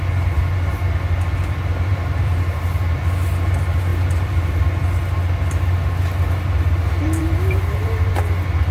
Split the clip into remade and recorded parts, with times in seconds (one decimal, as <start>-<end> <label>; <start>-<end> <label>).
0.0-1.9 recorded; 1.9-3.0 remade; 3.0-3.9 recorded; 3.9-4.5 remade; 4.5-7.2 recorded; 7.2-8.1 remade; 8.1-8.7 recorded